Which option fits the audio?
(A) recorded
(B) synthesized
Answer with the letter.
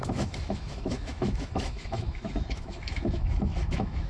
B